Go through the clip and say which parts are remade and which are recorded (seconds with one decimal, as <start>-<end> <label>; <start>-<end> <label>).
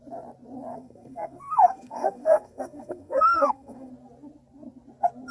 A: 0.0-0.7 recorded; 0.7-3.9 remade; 3.9-5.3 recorded